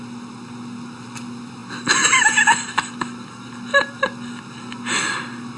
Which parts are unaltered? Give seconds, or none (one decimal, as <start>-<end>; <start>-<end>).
0.0-5.6

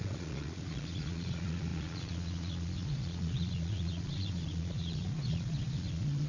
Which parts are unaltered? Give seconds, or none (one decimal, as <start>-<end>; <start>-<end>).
none

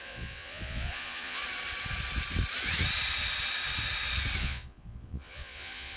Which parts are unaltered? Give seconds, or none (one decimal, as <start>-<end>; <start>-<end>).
1.4-4.4

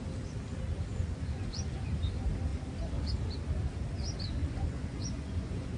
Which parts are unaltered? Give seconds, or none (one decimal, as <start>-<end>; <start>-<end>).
0.0-0.9; 1.9-4.4

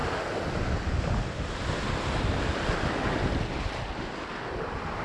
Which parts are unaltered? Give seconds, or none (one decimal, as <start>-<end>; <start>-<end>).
0.0-5.0